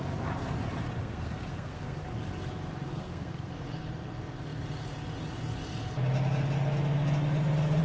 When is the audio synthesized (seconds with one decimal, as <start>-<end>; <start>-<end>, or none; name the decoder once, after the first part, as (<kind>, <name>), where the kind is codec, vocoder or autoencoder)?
1.0-2.1 (codec, SNAC); 2.9-3.5